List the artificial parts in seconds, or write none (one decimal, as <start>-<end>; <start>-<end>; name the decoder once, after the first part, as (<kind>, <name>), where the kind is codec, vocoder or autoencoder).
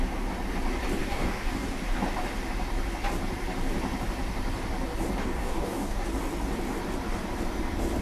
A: 1.0-1.8 (codec, DAC); 5.2-6.1